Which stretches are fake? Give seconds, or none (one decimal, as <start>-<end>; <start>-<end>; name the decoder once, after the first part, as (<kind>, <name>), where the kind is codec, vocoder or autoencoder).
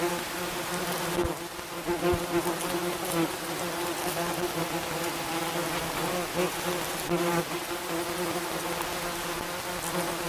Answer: none